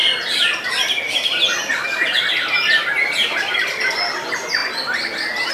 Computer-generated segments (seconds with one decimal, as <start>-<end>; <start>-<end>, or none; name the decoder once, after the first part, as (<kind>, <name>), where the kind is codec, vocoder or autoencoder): none